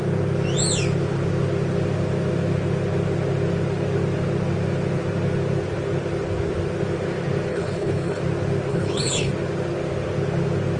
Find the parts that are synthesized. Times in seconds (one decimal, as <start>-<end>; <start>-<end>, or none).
7.5-8.2; 8.7-9.3